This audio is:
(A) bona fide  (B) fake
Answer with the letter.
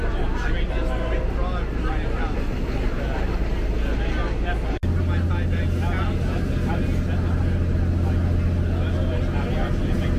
A